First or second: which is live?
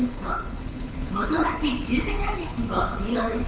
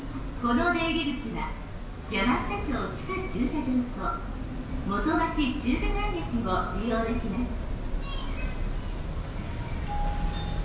second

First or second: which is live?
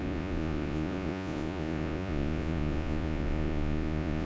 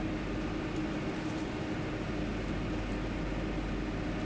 second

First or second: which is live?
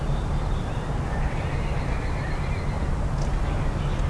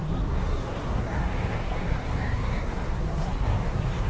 first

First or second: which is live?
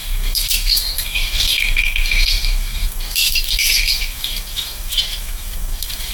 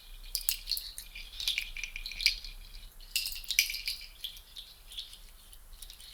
second